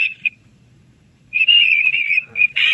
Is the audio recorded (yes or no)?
no